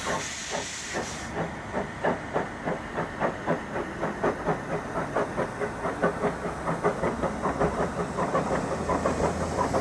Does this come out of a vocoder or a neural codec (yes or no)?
no